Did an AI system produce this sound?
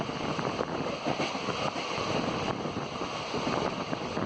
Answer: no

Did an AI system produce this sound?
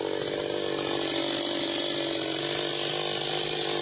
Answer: no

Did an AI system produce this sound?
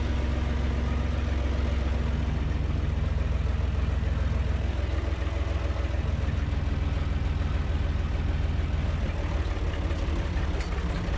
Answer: no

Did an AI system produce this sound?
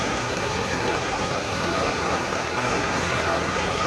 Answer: yes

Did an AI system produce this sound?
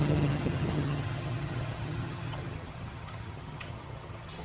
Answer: yes